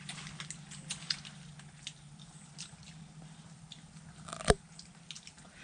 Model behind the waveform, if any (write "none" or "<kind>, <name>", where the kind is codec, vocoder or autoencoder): none